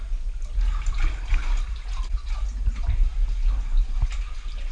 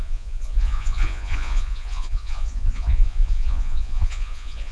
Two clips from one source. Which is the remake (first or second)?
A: second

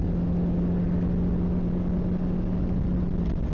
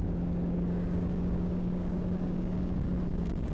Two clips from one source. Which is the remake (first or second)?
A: second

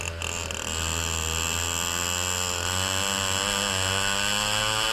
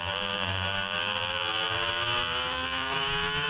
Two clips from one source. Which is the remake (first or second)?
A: second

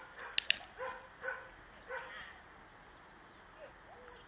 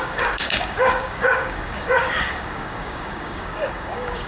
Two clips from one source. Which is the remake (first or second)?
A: second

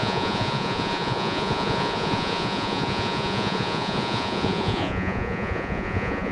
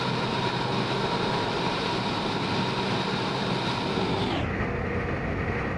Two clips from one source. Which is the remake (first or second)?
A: first